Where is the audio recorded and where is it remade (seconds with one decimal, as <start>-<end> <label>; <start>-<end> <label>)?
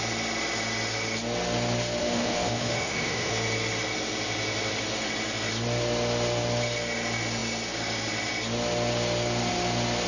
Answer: 0.0-2.0 recorded; 2.0-3.3 remade; 3.3-10.1 recorded